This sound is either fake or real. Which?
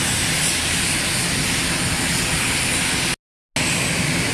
real